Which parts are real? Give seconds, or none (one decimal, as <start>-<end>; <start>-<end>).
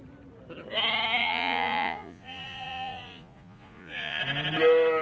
0.0-1.2; 4.2-5.0